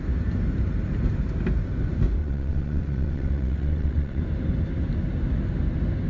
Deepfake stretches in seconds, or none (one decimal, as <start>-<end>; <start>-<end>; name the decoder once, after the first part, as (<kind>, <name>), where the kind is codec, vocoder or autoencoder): 2.2-4.2 (vocoder, WaveNeXt)